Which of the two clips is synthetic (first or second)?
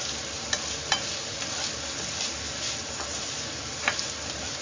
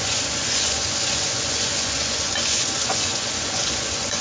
second